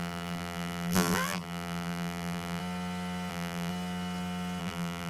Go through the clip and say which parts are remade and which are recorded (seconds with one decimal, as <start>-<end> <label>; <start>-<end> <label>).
0.0-2.6 remade; 2.6-3.3 recorded; 3.3-3.7 remade; 3.7-4.6 recorded; 4.6-5.1 remade